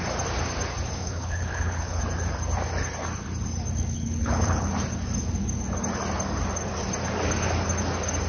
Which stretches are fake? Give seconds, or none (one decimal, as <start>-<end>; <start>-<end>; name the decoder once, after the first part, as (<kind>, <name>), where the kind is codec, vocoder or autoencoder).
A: 1.0-2.0 (codec, HILCodec); 3.9-4.7